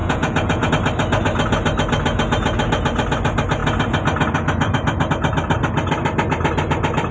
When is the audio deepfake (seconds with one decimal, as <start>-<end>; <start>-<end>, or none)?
0.0-0.7

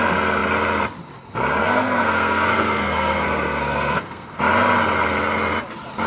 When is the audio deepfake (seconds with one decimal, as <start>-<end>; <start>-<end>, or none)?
1.6-4.4